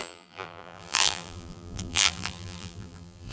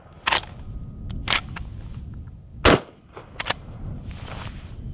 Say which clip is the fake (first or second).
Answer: first